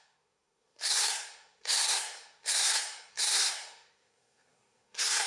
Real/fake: fake